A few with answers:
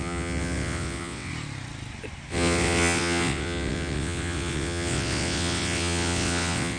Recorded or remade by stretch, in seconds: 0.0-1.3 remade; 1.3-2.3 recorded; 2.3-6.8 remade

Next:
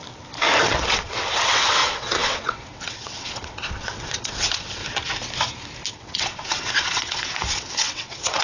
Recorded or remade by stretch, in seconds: 0.0-0.6 recorded; 0.6-4.8 remade; 4.8-5.9 recorded; 5.9-8.4 remade

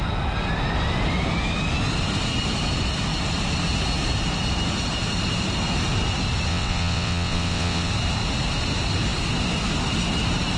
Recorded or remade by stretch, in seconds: 0.0-6.5 recorded; 6.5-7.9 remade; 7.9-10.6 recorded

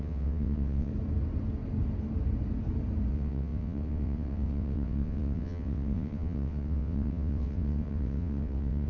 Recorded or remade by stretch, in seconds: 0.0-0.9 remade; 0.9-3.1 recorded; 3.1-8.9 remade

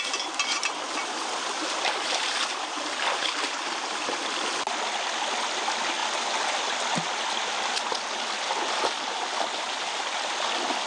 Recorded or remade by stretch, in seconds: 0.0-10.9 recorded

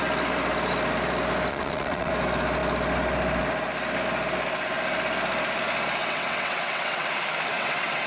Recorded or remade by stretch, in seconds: 0.0-1.5 recorded; 1.5-2.1 remade; 2.1-6.0 recorded; 6.0-7.1 remade; 7.1-7.5 recorded; 7.5-8.1 remade

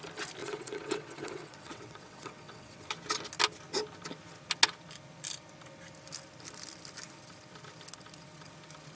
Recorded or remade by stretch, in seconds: 0.0-0.4 recorded; 0.4-2.8 remade; 2.8-9.0 recorded

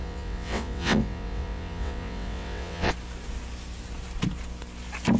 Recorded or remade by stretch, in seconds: 0.0-2.9 remade; 2.9-5.2 recorded